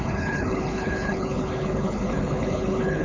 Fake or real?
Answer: fake